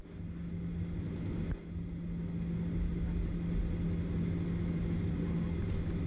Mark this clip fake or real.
real